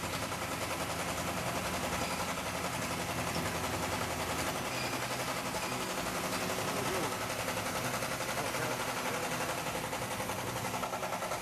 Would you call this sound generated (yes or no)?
no